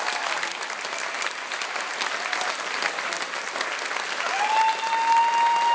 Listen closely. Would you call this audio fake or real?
real